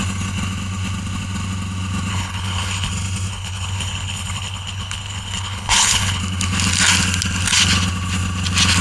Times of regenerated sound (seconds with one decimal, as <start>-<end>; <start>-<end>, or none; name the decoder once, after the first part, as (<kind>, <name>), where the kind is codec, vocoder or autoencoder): 2.1-2.9 (codec, HILCodec); 3.3-6.2